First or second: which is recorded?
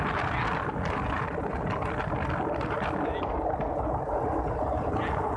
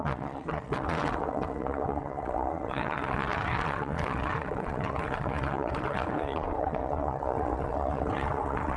first